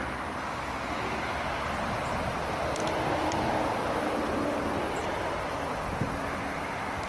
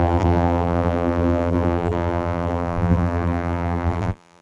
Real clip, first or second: first